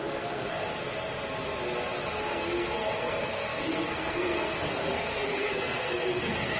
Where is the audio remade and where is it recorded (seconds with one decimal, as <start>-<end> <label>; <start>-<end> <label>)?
0.0-0.7 remade; 0.7-2.2 recorded; 2.2-6.6 remade